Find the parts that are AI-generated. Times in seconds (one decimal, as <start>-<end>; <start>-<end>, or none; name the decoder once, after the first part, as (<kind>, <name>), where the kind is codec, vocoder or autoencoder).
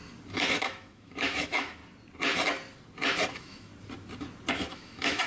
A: 0.5-1.8 (autoencoder, DAC-VAE); 3.3-3.7; 4.5-5.3